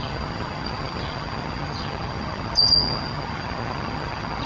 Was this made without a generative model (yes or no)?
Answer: no